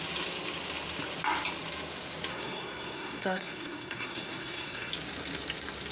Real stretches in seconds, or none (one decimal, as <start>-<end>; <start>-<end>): 0.0-2.3; 4.9-5.9